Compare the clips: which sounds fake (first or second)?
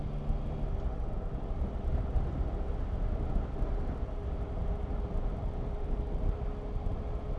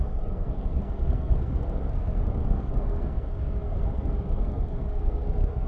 second